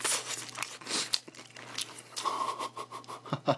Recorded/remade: recorded